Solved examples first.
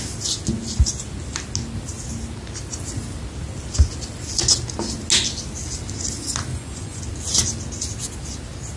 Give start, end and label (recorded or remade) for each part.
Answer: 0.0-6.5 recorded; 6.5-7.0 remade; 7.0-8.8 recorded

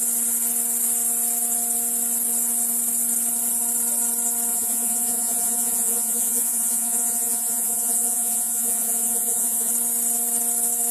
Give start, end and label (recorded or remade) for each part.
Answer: 0.0-4.5 recorded; 4.5-9.7 remade; 9.7-10.9 recorded

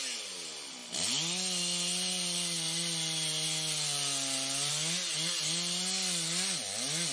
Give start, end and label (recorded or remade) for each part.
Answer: 0.0-7.1 recorded

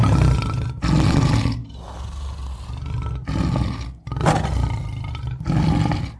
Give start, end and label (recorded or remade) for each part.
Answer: 0.0-6.2 recorded

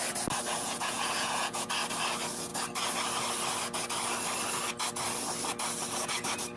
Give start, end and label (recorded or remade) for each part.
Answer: 0.0-0.5 recorded; 0.5-1.7 remade; 1.7-6.6 recorded

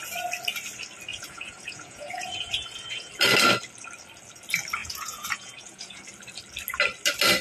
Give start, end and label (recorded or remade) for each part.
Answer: 0.0-1.1 recorded; 1.1-3.1 remade; 3.1-4.8 recorded; 4.8-6.0 remade; 6.0-7.4 recorded

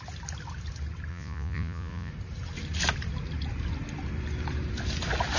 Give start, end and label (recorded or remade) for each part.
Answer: 0.0-1.1 recorded; 1.1-2.1 remade; 2.1-5.4 recorded